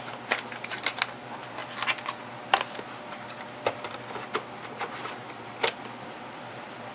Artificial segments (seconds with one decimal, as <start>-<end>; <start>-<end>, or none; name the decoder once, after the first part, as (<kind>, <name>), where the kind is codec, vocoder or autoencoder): 5.2-6.9 (vocoder, BigVGAN v2)